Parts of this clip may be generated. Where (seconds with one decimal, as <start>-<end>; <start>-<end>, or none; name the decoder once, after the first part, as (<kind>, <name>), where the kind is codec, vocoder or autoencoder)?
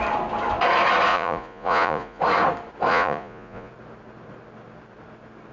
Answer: 1.1-2.2 (vocoder, Vocos); 2.9-3.7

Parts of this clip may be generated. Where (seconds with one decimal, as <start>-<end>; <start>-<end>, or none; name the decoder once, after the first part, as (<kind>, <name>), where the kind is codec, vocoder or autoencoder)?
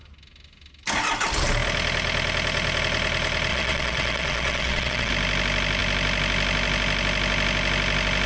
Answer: 3.5-5.1 (vocoder, Vocos)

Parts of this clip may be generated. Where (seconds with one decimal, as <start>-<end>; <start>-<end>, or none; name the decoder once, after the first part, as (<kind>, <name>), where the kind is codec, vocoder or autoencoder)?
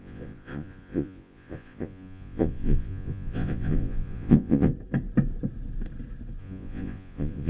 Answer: 0.0-4.7 (vocoder, Vocos); 6.4-7.5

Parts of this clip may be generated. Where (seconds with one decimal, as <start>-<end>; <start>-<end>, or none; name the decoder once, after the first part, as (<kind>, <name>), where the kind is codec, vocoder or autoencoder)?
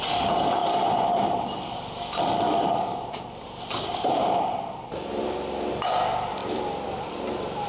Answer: 0.6-5.2 (vocoder, BigVGAN v2); 6.4-7.7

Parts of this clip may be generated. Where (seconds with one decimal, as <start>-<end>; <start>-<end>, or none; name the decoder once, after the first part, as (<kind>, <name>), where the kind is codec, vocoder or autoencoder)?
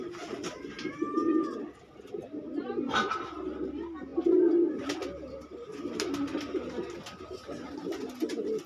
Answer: none